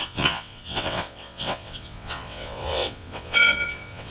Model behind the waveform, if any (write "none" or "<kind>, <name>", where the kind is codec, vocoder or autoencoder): vocoder, WaveNeXt